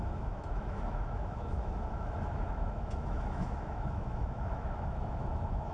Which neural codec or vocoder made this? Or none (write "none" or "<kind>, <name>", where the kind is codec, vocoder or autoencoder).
autoencoder, DAC-VAE